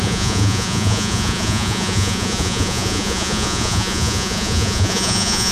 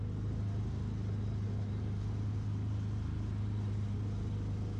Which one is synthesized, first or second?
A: first